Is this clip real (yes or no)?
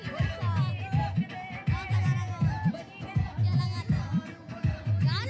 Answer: yes